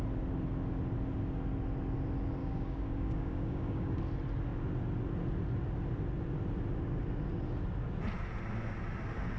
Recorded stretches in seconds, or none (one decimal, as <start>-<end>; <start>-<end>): 0.0-2.4; 4.0-9.4